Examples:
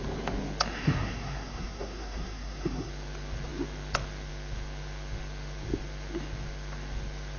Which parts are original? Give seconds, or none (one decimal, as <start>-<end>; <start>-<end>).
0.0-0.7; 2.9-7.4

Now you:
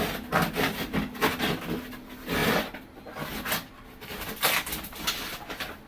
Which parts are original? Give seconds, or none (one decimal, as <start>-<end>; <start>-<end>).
0.0-5.9

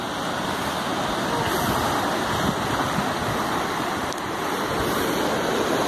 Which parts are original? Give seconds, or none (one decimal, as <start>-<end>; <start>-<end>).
0.0-5.9